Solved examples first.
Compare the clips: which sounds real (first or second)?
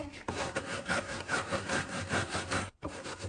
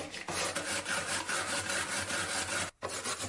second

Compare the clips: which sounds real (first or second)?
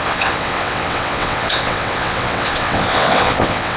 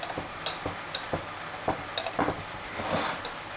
second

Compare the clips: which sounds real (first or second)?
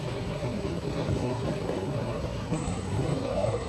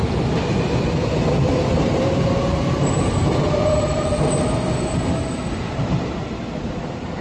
second